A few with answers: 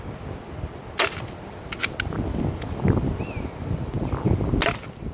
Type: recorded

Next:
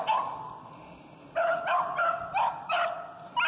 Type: recorded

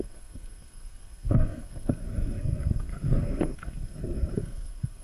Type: remade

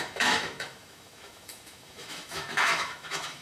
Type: remade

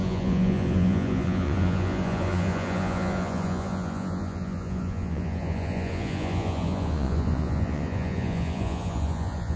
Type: remade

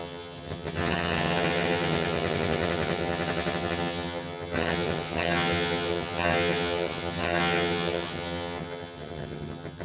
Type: remade